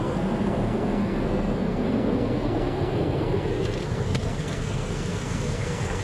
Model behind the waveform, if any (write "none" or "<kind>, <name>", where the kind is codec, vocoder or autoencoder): codec, SNAC